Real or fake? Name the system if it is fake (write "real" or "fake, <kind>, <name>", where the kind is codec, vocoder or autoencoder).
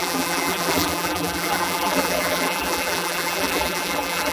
fake, vocoder, BigVGAN v2